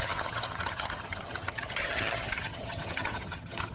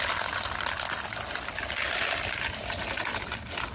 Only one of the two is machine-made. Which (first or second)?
first